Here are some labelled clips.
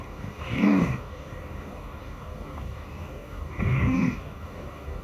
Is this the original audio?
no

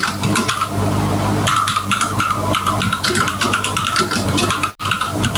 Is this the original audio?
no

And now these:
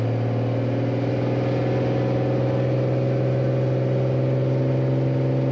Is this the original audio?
yes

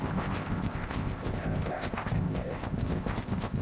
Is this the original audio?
no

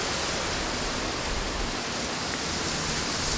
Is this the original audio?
yes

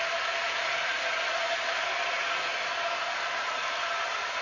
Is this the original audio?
yes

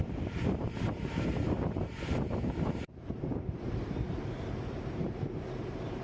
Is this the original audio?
no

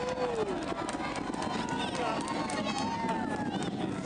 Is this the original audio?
yes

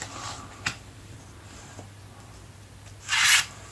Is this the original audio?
yes